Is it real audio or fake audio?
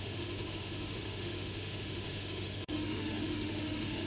fake